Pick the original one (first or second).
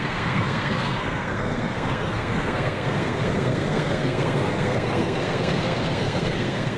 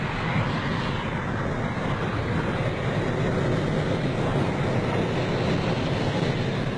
second